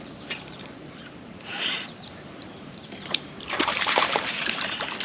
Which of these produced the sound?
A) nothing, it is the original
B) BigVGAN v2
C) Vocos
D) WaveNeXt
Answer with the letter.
B